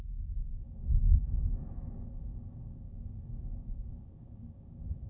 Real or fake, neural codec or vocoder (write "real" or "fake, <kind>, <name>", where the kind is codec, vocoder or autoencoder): fake, codec, DAC